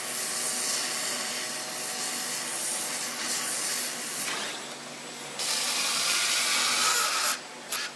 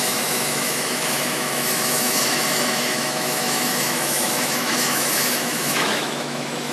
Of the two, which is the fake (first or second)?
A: second